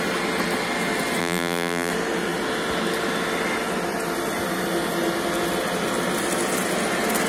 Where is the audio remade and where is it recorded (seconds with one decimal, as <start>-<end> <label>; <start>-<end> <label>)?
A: 0.0-1.2 recorded; 1.2-1.9 remade; 1.9-7.3 recorded